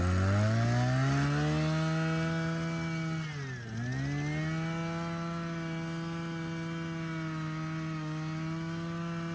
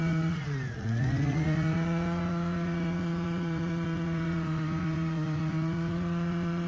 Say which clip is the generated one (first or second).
second